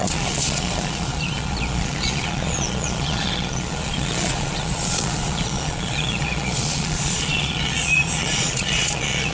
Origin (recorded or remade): remade